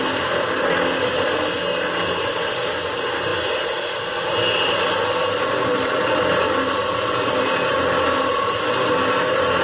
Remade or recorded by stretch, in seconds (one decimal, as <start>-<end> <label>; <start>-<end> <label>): 0.0-9.6 recorded